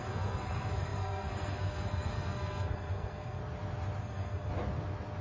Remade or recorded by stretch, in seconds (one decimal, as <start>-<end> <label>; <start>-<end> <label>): 0.0-3.4 remade; 3.4-4.0 recorded; 4.0-4.5 remade; 4.5-5.2 recorded